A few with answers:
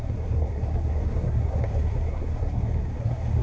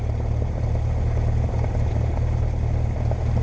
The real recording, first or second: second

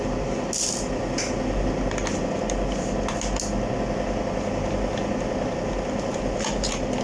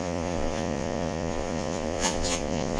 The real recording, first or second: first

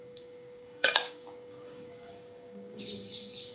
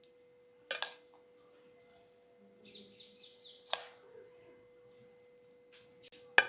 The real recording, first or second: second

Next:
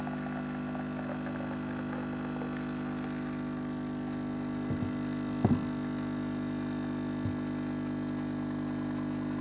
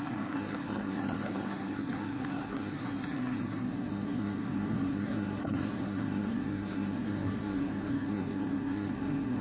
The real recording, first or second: first